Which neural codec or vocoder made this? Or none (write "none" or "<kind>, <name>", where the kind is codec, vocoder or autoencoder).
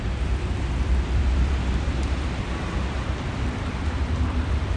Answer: vocoder, BigVGAN v2